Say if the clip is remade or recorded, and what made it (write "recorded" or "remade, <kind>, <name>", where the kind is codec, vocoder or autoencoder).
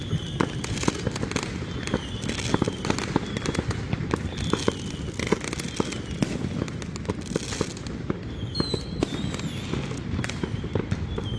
recorded